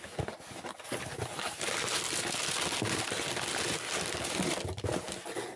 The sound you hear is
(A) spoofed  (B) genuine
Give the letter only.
B